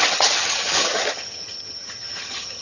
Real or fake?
fake